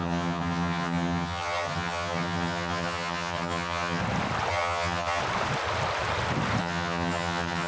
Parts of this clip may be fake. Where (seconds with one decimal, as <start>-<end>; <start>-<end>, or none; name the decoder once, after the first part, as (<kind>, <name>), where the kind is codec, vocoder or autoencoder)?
0.0-4.0 (vocoder, HiFi-GAN); 4.5-5.2; 6.6-7.7